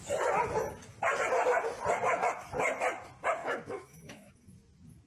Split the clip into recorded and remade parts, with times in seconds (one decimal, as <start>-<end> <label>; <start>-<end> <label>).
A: 0.0-3.4 recorded; 3.4-4.3 remade; 4.3-5.1 recorded

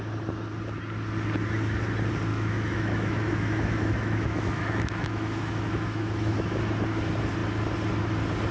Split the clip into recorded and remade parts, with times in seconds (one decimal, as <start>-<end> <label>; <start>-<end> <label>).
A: 0.0-2.3 recorded; 2.3-6.6 remade; 6.6-8.5 recorded

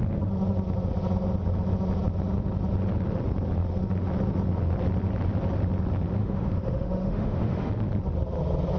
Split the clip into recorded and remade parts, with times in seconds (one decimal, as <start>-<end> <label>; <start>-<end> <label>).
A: 0.0-6.2 recorded; 6.2-7.7 remade; 7.7-8.8 recorded

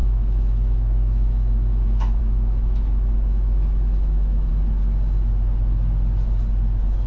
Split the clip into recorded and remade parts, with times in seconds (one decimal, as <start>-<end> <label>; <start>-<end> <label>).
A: 0.0-4.5 remade; 4.5-7.1 recorded